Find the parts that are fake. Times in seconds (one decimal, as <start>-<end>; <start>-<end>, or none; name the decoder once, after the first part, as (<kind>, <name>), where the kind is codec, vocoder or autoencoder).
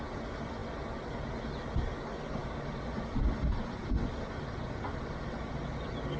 none